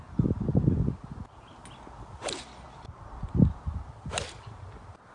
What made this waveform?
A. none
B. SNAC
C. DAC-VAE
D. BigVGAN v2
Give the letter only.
A